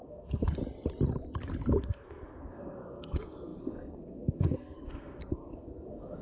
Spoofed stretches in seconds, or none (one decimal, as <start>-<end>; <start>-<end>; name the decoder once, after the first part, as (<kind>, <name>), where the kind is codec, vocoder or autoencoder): 0.0-0.6 (codec, SNAC); 1.8-6.2